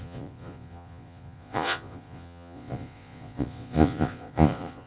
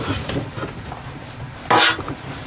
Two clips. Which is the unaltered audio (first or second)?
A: second